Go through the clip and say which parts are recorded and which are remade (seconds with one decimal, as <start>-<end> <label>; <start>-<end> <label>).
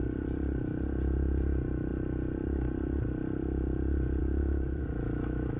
0.0-4.2 recorded; 4.2-5.6 remade